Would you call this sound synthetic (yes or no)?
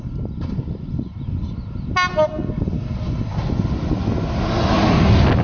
no